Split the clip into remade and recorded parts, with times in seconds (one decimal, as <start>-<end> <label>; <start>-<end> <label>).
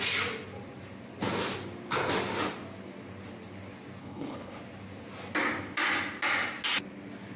0.0-4.0 recorded; 4.0-4.6 remade; 4.6-7.4 recorded